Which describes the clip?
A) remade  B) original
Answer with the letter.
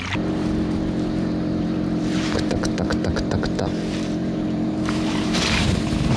A